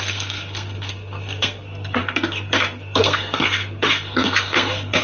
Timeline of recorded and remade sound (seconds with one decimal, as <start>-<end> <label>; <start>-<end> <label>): 0.0-5.0 remade